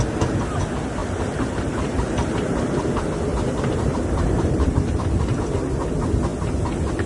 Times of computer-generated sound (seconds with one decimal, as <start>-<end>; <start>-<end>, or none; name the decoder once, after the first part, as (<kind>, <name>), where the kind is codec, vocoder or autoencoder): 1.0-2.9 (vocoder, BigVGAN v2); 3.3-5.2